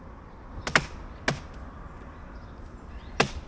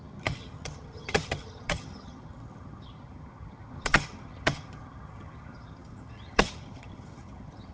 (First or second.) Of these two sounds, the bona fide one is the first